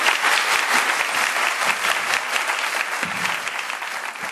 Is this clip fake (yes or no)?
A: no